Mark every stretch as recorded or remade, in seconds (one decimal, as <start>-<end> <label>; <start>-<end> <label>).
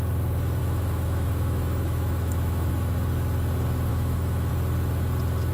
0.0-0.6 recorded; 0.6-2.7 remade; 2.7-3.9 recorded; 3.9-4.5 remade; 4.5-5.5 recorded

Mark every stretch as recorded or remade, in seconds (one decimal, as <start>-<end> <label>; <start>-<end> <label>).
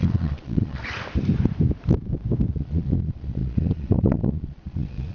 0.0-0.8 remade; 0.8-2.5 recorded; 2.5-5.1 remade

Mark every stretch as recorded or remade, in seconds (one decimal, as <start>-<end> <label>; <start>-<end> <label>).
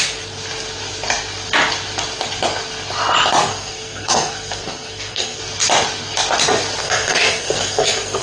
0.0-3.4 recorded; 3.4-5.4 remade; 5.4-6.8 recorded; 6.8-8.2 remade